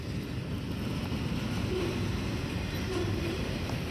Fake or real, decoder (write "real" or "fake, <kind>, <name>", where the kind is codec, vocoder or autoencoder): real